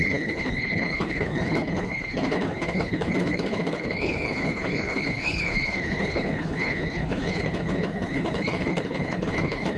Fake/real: fake